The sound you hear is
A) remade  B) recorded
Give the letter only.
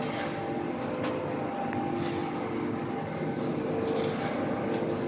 B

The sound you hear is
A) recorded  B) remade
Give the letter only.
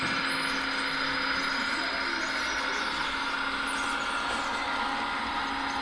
A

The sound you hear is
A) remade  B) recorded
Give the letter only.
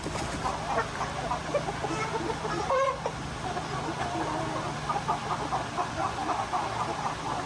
B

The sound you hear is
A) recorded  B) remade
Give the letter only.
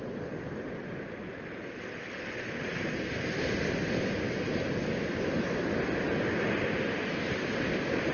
A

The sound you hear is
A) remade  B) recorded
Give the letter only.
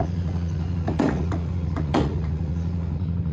A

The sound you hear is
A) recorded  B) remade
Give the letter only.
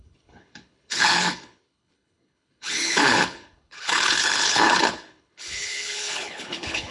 B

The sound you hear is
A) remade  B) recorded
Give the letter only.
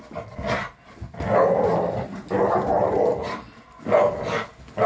B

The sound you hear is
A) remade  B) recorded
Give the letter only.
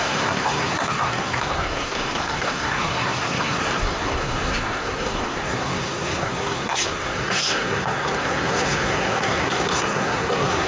A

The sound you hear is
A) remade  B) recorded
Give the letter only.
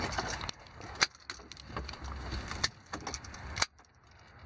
B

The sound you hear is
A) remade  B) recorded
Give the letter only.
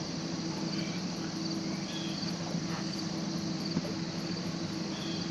B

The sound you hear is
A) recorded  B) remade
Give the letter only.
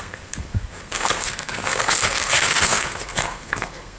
B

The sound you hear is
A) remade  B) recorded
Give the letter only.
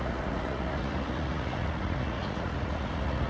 A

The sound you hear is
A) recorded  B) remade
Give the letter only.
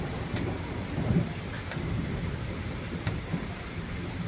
B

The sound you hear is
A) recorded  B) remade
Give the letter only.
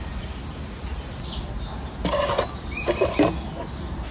A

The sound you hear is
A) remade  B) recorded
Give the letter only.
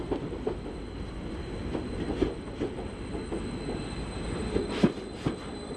B